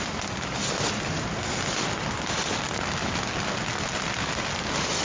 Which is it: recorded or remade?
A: recorded